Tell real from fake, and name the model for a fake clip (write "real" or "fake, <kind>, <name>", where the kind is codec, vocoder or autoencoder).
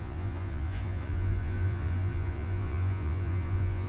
fake, vocoder, Vocos